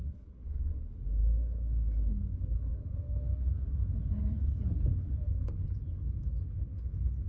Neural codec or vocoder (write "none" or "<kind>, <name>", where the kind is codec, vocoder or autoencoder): codec, HILCodec